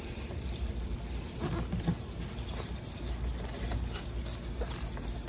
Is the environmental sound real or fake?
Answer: real